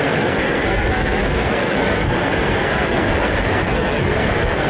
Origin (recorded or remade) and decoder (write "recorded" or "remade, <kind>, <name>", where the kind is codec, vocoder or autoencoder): remade, codec, SNAC